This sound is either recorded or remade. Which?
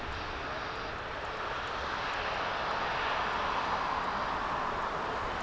recorded